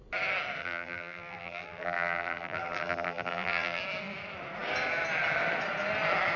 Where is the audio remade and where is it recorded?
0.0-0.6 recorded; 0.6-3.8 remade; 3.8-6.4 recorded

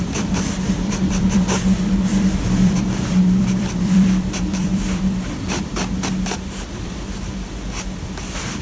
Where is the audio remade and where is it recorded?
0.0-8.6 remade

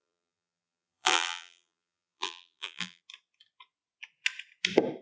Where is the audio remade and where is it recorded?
0.0-3.0 remade; 3.0-5.0 recorded